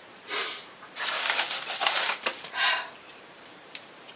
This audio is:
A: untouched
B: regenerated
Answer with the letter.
B